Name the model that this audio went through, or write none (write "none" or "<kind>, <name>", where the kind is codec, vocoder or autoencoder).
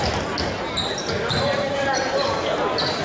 none